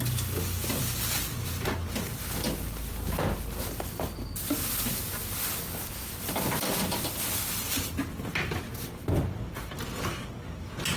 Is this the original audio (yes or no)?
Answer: yes